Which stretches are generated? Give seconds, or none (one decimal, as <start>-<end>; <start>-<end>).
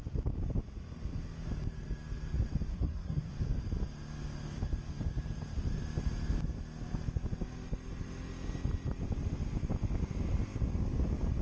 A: 2.7-3.3